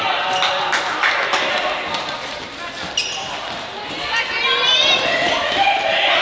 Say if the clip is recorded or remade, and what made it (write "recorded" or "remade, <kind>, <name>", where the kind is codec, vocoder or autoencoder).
recorded